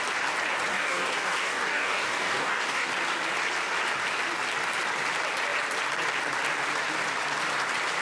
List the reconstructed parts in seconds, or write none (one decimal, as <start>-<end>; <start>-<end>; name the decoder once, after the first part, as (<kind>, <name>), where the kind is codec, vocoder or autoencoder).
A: 0.7-2.9 (codec, DAC)

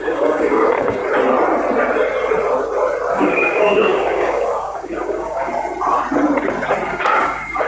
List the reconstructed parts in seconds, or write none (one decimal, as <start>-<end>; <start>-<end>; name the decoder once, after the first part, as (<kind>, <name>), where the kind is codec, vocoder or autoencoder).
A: 0.0-1.0 (codec, DAC); 3.1-5.5; 6.9-7.7